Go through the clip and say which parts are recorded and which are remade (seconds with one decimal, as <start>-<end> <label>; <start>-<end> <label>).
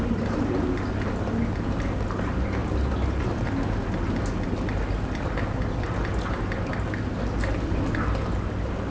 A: 0.0-8.9 recorded